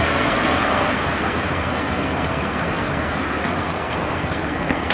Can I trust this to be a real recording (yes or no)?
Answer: no